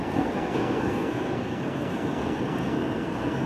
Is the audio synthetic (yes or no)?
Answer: yes